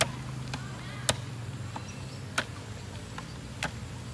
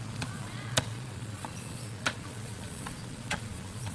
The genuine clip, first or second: first